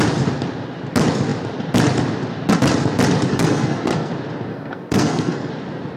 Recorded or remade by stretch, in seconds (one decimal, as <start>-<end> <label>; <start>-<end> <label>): 0.0-3.3 recorded; 3.3-4.1 remade; 4.1-4.5 recorded; 4.5-5.5 remade; 5.5-6.0 recorded